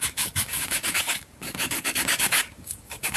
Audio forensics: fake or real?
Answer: fake